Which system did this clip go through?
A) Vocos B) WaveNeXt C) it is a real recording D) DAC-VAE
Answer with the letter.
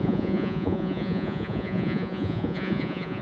A